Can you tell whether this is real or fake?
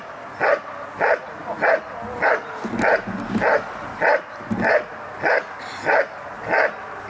real